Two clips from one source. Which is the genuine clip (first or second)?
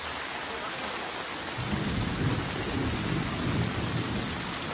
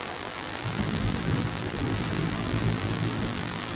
first